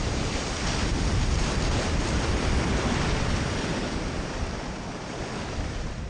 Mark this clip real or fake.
fake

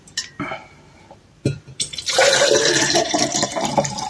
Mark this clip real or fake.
fake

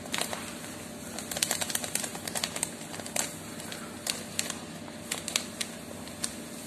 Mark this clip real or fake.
real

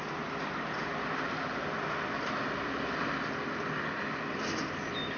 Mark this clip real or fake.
real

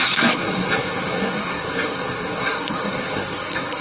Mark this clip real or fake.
fake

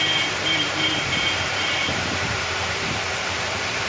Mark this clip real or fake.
fake